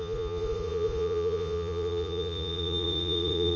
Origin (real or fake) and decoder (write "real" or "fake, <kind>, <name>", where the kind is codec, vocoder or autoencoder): fake, vocoder, Vocos